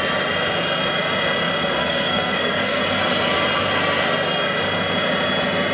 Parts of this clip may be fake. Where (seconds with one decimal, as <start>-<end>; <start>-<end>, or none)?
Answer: 1.8-2.8